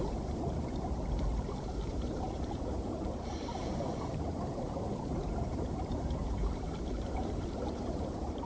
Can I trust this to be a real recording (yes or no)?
no